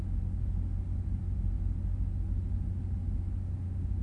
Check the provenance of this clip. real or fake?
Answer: real